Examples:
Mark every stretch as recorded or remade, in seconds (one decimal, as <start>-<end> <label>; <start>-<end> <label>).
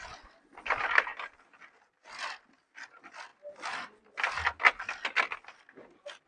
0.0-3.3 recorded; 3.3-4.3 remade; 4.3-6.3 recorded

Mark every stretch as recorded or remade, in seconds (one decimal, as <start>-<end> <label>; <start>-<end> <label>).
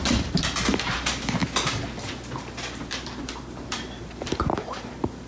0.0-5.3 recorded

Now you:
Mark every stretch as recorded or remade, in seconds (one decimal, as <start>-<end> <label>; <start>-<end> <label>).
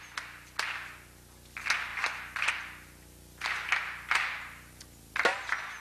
0.0-5.8 recorded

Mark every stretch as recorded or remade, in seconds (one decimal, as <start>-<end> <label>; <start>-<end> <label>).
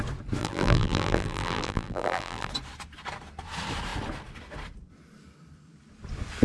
0.0-0.4 recorded; 0.4-2.5 remade; 2.5-6.4 recorded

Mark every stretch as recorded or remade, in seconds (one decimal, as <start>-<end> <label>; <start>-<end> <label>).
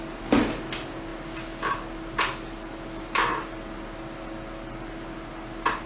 0.0-5.9 recorded